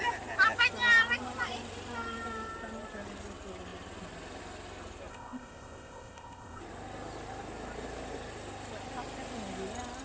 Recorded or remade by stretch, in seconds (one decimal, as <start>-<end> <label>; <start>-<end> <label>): 0.0-5.1 recorded; 5.1-6.6 remade; 6.6-10.0 recorded